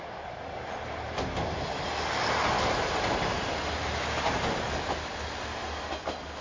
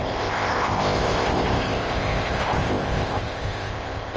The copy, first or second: second